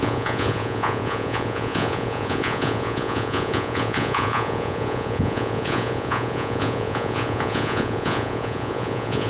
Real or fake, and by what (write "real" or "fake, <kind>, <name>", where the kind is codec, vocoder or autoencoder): fake, vocoder, Vocos